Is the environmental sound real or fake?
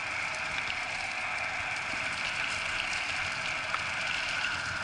real